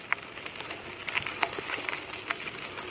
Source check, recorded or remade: recorded